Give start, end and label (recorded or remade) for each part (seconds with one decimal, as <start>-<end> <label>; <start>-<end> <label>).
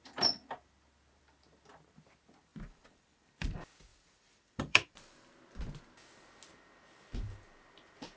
0.0-2.5 recorded; 2.5-3.3 remade; 3.3-3.9 recorded; 3.9-5.4 remade; 5.4-8.2 recorded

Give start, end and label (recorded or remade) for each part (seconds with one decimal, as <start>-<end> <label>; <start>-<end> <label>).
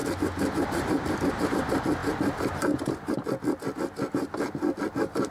0.0-5.3 recorded